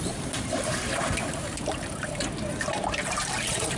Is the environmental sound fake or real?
fake